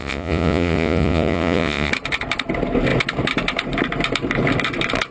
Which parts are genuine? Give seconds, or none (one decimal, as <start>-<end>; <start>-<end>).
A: 1.9-5.1

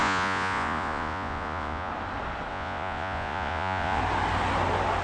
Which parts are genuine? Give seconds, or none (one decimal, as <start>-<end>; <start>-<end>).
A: 1.9-2.5; 4.0-5.0

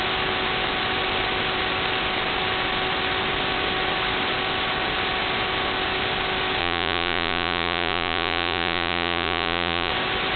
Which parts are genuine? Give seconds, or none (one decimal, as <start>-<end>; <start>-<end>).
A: 0.0-6.6; 9.9-10.4

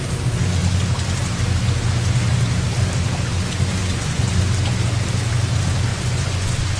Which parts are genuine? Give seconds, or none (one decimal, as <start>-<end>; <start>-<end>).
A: 0.0-3.8; 4.4-5.9

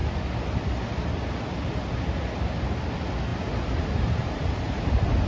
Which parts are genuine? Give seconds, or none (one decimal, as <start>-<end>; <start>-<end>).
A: 0.0-5.3